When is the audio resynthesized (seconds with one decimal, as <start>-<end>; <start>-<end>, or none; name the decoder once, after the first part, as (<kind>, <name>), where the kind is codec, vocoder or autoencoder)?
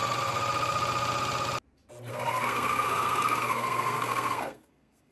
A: 2.1-5.1 (codec, SNAC)